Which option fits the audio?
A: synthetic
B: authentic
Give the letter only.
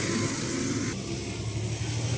B